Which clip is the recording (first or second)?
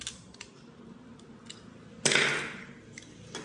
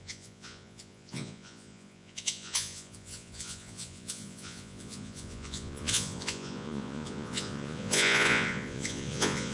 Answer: first